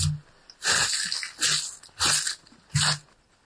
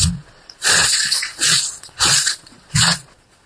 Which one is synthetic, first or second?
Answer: second